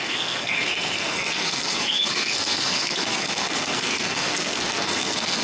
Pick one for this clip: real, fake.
fake